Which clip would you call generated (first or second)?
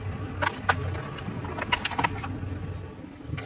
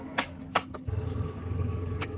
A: second